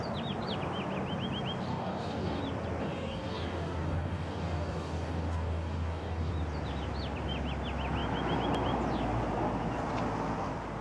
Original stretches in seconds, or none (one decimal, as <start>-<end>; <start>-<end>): 0.0-1.7; 2.4-2.8; 6.3-10.8